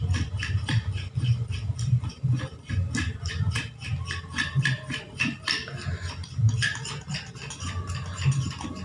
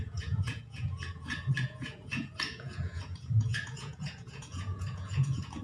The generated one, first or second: second